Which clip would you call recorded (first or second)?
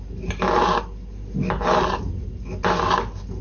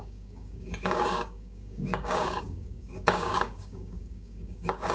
first